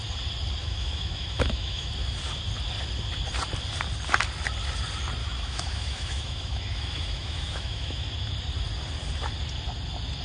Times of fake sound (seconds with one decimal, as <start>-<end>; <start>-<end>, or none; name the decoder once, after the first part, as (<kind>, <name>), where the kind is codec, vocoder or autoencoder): 0.6-1.9 (autoencoder, DAC-VAE); 5.2-8.1